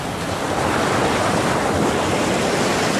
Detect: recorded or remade recorded